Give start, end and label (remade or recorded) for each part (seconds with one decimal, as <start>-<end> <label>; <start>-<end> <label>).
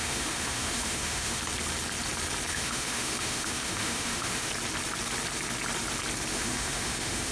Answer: 0.0-1.4 remade; 1.4-2.5 recorded; 2.5-4.5 remade; 4.5-6.3 recorded; 6.3-7.3 remade